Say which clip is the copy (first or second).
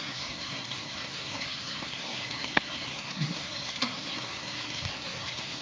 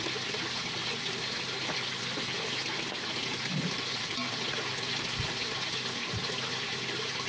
first